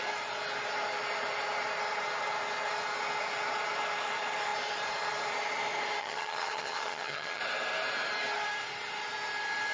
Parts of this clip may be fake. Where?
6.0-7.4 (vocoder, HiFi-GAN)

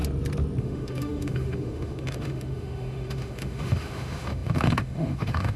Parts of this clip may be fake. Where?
0.6-5.6 (autoencoder, DAC-VAE)

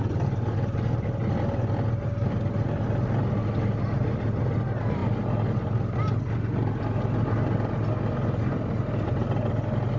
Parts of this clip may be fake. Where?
none